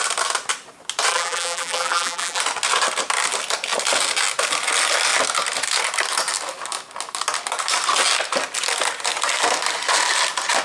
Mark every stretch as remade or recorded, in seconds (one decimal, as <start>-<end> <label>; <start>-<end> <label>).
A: 0.0-1.1 recorded; 1.1-2.4 remade; 2.4-10.6 recorded